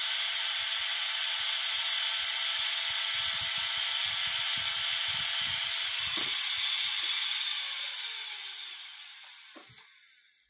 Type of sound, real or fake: real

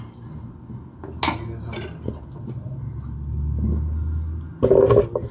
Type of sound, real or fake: real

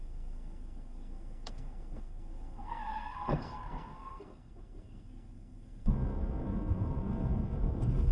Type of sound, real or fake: fake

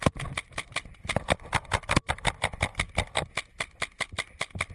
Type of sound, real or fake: real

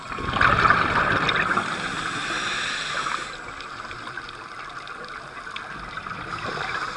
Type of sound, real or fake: real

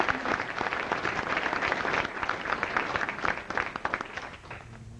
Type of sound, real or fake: real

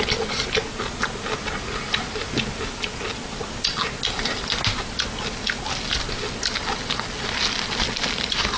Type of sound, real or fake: real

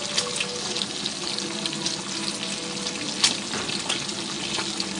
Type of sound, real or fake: real